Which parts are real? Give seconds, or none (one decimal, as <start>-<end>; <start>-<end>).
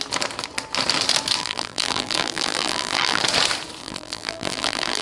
0.0-1.4; 3.2-3.8